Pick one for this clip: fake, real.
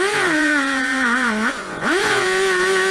fake